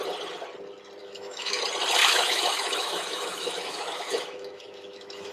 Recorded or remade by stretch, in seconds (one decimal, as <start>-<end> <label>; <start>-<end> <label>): 0.0-1.0 recorded; 1.0-1.6 remade; 1.6-2.0 recorded; 2.0-5.3 remade